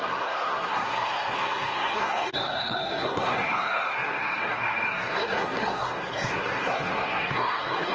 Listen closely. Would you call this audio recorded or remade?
remade